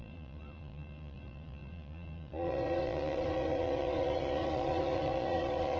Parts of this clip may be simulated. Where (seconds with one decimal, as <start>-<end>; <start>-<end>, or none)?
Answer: 0.0-5.8